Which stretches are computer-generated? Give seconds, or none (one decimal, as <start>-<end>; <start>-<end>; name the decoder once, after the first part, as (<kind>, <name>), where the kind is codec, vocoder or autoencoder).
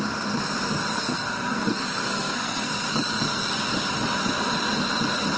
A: 0.9-3.5 (codec, SNAC)